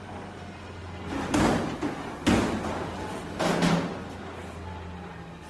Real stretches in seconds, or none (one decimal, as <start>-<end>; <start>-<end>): 0.0-5.5